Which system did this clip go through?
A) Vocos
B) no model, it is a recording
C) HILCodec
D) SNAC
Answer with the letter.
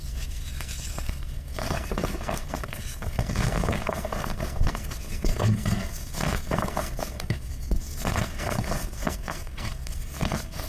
D